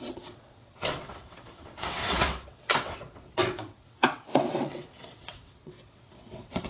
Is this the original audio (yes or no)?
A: no